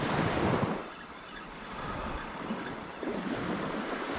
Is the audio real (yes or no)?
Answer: yes